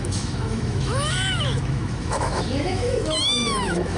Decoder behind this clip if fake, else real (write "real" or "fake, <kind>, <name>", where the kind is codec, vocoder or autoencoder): fake, autoencoder, DAC-VAE